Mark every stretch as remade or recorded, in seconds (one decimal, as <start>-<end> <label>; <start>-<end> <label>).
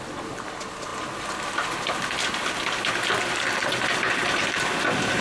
0.0-5.2 recorded